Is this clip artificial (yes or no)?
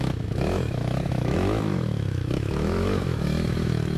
yes